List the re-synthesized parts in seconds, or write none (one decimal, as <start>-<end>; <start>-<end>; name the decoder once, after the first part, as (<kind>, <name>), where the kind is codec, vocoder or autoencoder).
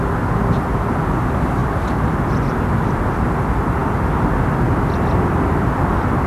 none